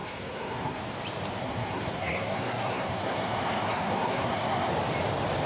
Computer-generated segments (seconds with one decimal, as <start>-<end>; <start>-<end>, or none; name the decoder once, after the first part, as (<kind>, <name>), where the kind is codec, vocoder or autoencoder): 0.0-0.8 (codec, SNAC); 1.4-4.7